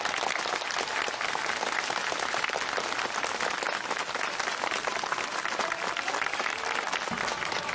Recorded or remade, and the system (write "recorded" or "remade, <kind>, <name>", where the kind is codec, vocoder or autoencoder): recorded